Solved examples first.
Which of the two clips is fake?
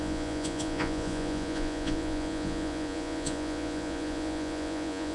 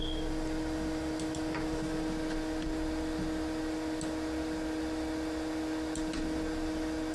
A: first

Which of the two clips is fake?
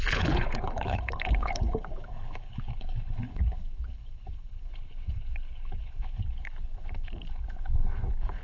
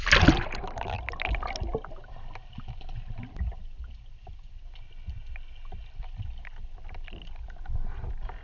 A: first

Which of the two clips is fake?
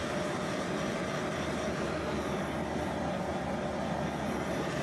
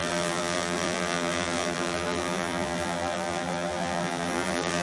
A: second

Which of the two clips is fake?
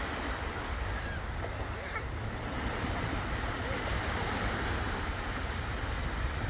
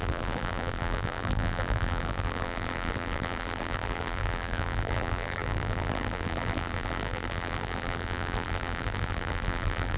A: second